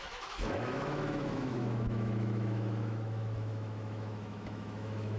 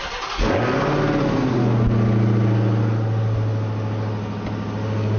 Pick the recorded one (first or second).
second